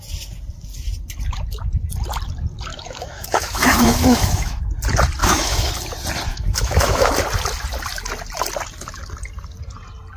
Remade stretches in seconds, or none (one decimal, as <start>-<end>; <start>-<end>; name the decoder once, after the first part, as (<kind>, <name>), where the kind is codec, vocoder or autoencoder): 2.7-4.6 (autoencoder, DAC-VAE); 5.2-5.7; 6.3-7.1